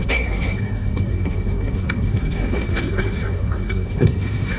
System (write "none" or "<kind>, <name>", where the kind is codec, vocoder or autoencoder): codec, SNAC